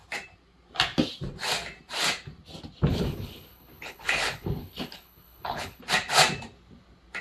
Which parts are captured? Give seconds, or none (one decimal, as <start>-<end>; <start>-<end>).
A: 0.0-2.9; 5.8-7.2